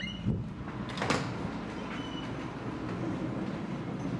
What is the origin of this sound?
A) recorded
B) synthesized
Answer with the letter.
A